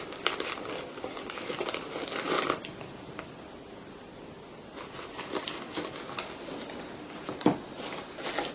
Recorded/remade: recorded